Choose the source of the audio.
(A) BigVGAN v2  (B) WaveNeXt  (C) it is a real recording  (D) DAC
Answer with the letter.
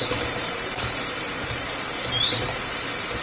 A